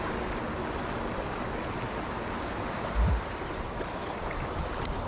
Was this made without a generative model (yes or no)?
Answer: yes